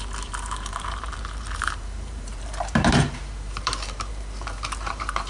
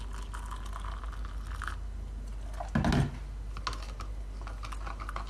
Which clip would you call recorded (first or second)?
second